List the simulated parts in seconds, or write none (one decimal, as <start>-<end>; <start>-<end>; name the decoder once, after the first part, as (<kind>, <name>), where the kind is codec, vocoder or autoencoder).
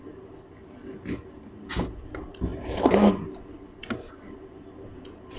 none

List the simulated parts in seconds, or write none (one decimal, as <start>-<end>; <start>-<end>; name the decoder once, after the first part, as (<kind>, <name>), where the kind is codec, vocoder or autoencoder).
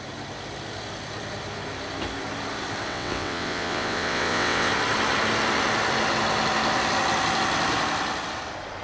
2.9-4.7 (vocoder, WaveNeXt)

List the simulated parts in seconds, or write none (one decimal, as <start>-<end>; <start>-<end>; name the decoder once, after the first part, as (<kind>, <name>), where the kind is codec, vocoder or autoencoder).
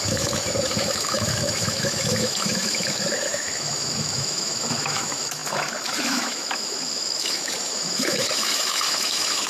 0.0-9.5 (autoencoder, DAC-VAE)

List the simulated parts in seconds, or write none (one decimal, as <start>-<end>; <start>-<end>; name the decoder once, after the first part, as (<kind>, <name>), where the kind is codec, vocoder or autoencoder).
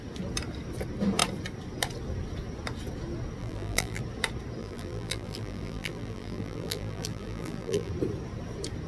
3.4-4.0 (vocoder, BigVGAN v2); 4.6-7.9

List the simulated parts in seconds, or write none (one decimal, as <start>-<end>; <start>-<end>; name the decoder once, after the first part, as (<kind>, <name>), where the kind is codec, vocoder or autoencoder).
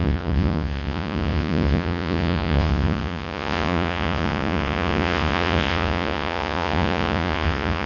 0.0-7.9 (vocoder, Vocos)